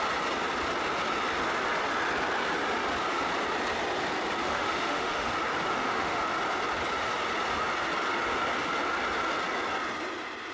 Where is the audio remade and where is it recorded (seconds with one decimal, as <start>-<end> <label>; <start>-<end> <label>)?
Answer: 0.0-4.4 recorded; 4.4-5.3 remade; 5.3-5.7 recorded; 5.7-6.2 remade; 6.2-10.5 recorded